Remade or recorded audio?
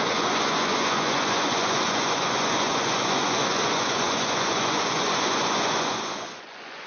remade